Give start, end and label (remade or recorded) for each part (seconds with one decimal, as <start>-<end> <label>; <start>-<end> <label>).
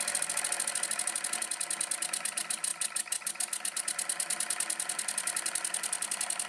0.0-6.5 recorded